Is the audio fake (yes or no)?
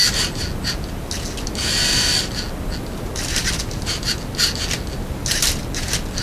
no